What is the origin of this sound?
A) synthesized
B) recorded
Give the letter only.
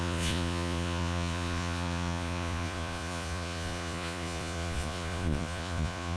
A